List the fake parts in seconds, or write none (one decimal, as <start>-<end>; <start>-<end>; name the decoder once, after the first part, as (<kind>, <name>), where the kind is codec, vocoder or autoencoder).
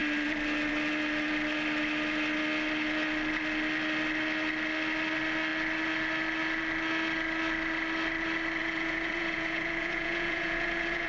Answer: 8.6-11.1 (vocoder, Vocos)